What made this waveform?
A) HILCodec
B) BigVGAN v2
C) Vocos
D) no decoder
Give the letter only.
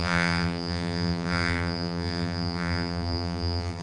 B